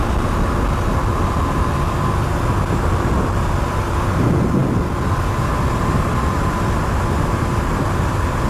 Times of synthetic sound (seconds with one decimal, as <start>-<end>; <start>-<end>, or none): none